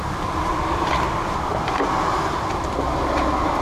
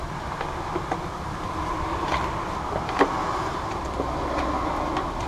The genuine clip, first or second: second